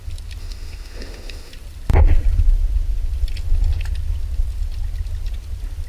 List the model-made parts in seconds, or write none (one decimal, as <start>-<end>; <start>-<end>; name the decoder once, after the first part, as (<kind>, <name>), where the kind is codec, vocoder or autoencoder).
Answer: 0.4-1.5 (autoencoder, DAC-VAE)